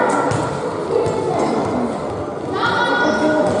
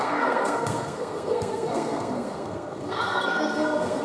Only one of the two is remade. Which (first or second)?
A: second